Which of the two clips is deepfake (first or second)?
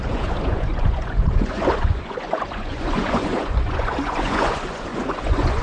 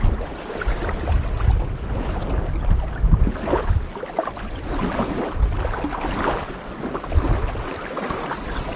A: first